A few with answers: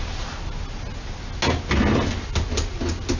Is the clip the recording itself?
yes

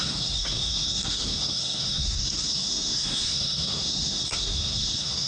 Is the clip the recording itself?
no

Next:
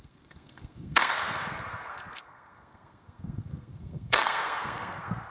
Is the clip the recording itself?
no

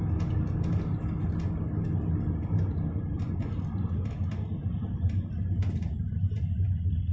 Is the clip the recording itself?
yes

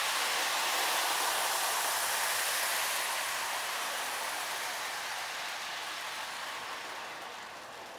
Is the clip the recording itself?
yes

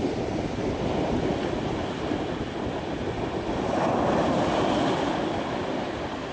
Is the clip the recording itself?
yes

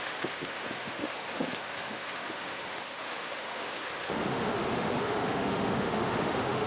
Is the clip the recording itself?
no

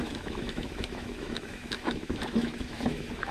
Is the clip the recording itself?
no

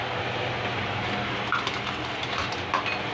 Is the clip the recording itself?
yes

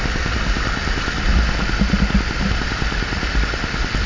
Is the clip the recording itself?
yes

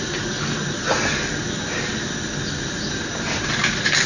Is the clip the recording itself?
yes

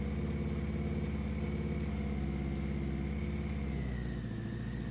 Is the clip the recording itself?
yes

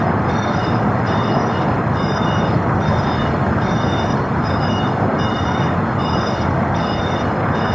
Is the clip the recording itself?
no